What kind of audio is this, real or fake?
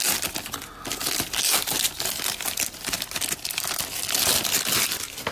real